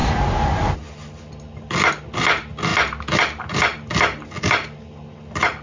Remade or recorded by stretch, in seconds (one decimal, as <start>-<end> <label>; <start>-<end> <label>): 0.0-5.6 recorded